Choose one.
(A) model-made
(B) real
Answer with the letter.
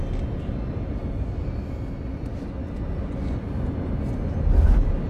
B